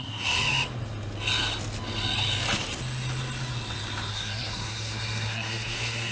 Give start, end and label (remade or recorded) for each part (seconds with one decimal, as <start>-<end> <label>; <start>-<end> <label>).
0.0-0.4 remade; 0.4-4.1 recorded; 4.1-6.1 remade